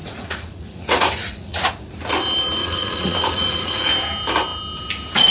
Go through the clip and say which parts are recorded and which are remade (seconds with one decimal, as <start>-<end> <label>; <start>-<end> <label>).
0.0-1.7 remade; 1.7-2.6 recorded; 2.6-3.9 remade; 3.9-5.3 recorded